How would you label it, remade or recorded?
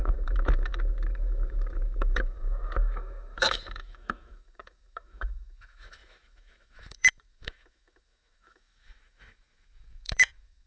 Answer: remade